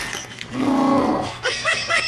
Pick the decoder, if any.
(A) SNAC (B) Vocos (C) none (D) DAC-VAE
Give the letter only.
A